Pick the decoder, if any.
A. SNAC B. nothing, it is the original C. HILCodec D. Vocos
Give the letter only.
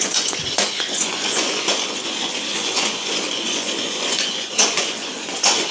D